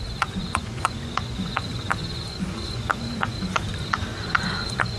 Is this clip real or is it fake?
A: fake